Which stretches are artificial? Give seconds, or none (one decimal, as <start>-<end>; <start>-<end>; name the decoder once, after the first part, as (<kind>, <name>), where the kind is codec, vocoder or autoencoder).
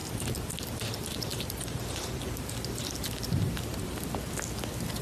0.0-0.9 (vocoder, BigVGAN v2); 1.3-4.0